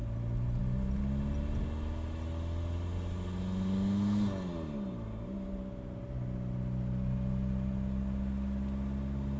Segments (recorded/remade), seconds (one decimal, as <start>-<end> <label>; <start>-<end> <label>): 0.0-9.4 recorded